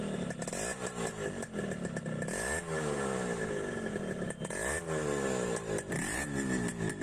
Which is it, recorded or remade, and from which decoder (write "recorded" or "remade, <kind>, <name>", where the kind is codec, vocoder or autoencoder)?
recorded